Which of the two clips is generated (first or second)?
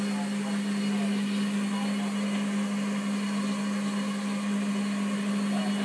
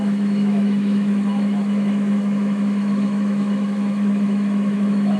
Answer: second